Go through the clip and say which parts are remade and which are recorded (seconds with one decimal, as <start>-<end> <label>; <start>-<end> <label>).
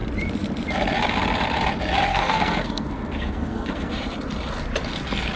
0.0-2.1 recorded; 2.1-3.9 remade; 3.9-5.4 recorded